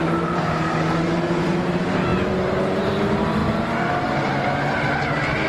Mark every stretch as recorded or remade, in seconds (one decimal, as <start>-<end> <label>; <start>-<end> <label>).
0.0-5.5 recorded